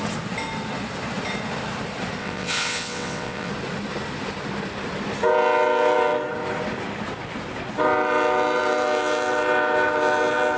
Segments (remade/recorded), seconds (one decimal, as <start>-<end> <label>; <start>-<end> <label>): 0.0-2.2 recorded; 2.2-3.5 remade; 3.5-10.6 recorded